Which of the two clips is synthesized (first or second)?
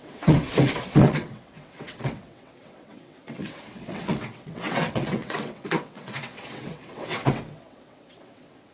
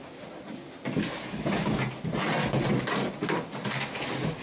first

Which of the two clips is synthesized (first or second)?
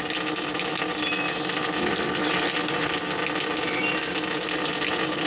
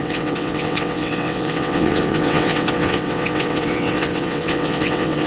second